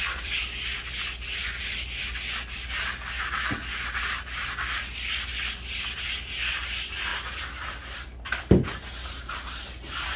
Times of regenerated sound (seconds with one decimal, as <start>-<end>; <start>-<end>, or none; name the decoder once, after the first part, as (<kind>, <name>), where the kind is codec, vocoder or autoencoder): 7.1-8.4 (vocoder, BigVGAN v2)